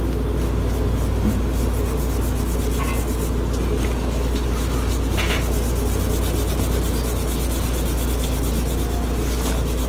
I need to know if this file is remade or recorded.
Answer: recorded